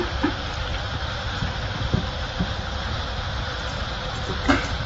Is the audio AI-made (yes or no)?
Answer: yes